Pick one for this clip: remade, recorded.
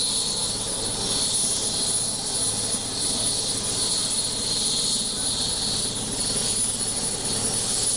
recorded